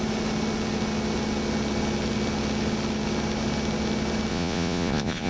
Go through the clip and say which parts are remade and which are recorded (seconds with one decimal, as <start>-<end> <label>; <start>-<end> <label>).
0.0-4.3 recorded; 4.3-5.3 remade